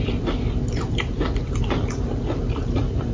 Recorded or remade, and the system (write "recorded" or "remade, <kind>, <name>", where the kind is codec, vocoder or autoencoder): recorded